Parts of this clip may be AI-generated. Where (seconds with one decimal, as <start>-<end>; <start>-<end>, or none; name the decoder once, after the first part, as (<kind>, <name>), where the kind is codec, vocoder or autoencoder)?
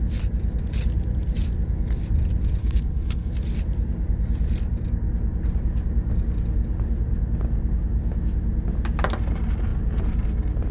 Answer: 2.6-3.3 (codec, HILCodec)